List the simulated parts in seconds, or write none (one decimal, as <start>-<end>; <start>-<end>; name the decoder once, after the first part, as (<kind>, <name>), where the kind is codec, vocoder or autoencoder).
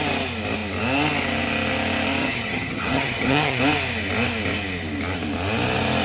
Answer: 2.2-3.6 (vocoder, HiFi-GAN)